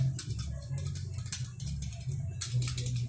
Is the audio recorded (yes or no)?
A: yes